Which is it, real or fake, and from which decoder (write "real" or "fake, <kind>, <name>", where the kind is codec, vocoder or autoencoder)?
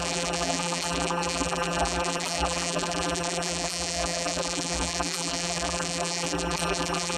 fake, vocoder, BigVGAN v2